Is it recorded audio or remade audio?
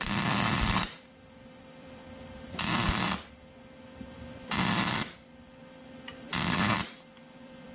remade